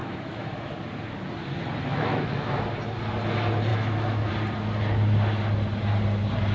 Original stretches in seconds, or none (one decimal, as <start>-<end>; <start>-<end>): 0.7-1.9; 2.6-3.7; 4.3-6.5